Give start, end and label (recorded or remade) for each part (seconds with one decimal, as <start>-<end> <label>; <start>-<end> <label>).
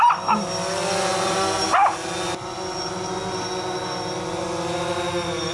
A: 0.0-5.5 recorded